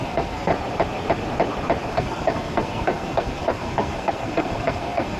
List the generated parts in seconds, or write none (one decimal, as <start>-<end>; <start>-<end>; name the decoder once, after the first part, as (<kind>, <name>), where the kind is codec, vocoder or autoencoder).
0.0-0.5 (codec, SNAC); 1.9-5.2